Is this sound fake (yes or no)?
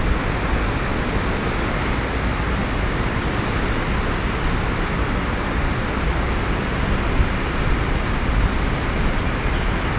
no